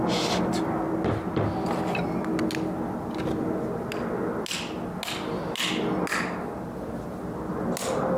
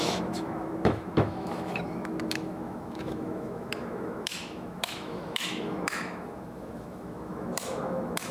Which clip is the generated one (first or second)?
second